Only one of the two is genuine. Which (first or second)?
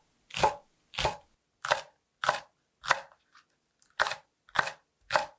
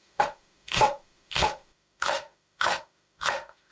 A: first